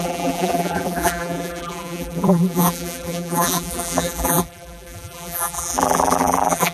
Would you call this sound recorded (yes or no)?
no